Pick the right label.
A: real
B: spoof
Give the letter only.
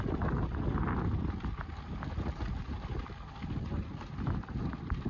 A